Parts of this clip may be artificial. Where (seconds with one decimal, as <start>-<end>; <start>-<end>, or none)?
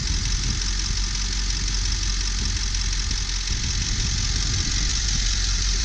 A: 4.9-5.8